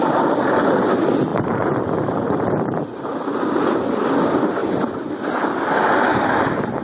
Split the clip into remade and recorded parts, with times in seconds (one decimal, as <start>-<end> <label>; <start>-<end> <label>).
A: 0.0-1.3 recorded; 1.3-3.0 remade; 3.0-4.6 recorded; 4.6-5.1 remade; 5.1-6.1 recorded; 6.1-6.8 remade